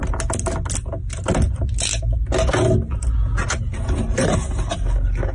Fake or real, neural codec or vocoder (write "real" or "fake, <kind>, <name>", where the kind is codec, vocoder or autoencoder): real